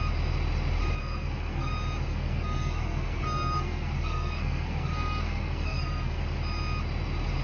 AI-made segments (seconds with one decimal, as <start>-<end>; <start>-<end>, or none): 1.0-1.7; 2.1-6.2